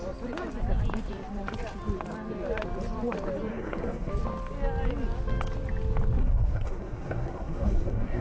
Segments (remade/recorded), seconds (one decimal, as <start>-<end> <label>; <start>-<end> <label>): 0.0-3.5 recorded; 3.5-4.1 remade; 4.1-6.2 recorded; 6.2-8.2 remade